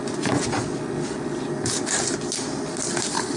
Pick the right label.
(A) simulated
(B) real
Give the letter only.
B